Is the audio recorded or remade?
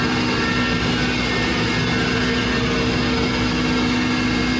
recorded